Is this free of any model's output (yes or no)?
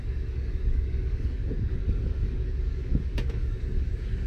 no